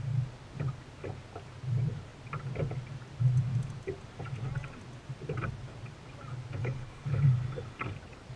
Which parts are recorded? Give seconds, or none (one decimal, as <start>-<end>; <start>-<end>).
0.0-6.6; 7.2-8.4